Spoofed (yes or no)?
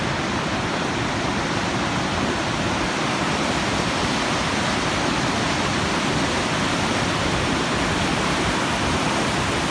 no